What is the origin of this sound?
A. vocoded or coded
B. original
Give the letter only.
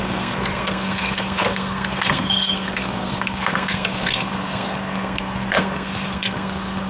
A